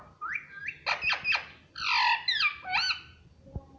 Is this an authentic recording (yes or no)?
yes